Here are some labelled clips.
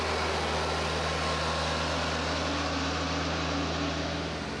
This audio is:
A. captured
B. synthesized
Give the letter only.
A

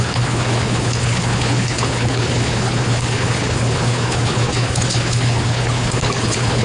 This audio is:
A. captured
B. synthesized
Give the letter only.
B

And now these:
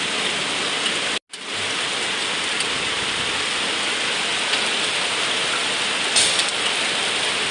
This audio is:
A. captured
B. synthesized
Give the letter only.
A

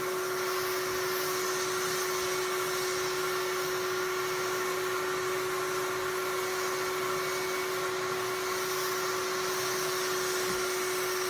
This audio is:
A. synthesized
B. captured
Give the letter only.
B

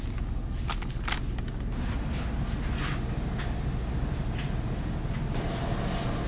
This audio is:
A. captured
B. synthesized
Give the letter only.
A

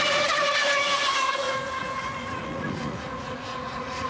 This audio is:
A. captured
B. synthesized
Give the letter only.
B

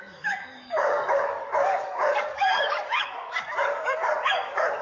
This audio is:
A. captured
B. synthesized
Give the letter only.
B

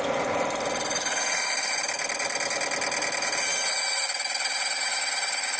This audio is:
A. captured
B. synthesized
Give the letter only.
A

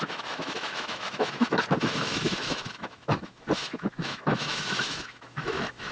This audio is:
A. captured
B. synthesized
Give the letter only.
B